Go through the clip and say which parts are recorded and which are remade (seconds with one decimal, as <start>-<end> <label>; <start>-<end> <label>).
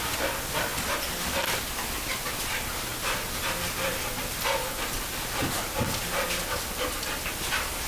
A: 0.0-7.9 recorded